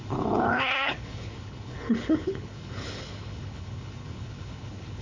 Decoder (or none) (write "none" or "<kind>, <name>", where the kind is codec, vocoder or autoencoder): codec, HILCodec